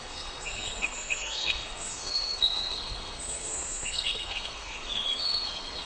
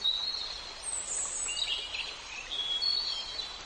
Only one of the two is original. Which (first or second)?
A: second